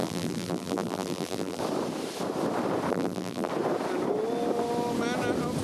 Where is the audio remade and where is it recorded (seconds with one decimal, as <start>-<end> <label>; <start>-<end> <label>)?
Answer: 0.0-1.6 remade; 1.6-2.9 recorded; 2.9-3.5 remade; 3.5-5.6 recorded